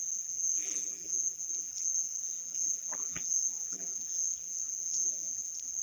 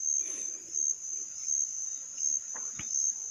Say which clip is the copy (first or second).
first